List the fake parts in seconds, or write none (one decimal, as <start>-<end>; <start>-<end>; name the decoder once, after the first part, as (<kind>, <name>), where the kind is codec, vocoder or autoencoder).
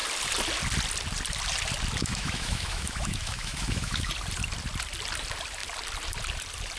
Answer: 2.0-4.1 (autoencoder, DAC-VAE)